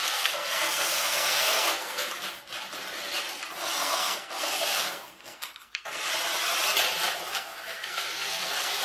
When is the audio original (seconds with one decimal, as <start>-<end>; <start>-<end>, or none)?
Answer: 2.1-3.8; 6.1-7.3